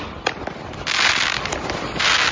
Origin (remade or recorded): recorded